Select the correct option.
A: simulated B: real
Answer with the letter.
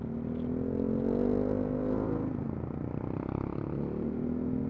B